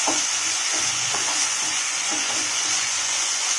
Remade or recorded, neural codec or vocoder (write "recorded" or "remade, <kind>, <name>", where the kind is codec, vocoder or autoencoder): remade, vocoder, Vocos